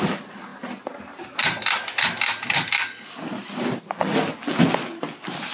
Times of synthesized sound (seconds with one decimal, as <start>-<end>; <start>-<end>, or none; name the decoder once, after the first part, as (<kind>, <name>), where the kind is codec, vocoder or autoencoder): none